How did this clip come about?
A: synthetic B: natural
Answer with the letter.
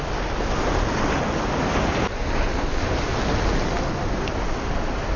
B